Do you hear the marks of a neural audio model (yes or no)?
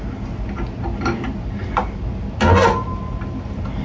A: no